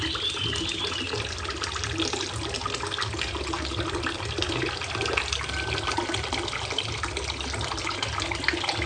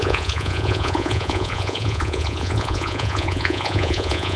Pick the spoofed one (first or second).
second